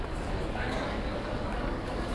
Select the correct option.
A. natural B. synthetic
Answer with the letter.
B